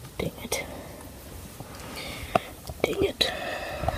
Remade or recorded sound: recorded